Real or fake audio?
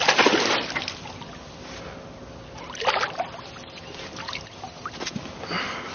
real